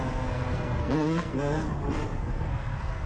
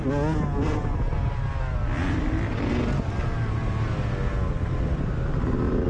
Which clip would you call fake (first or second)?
first